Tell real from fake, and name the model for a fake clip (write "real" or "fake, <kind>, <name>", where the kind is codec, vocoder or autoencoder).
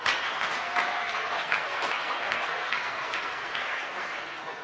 fake, codec, SNAC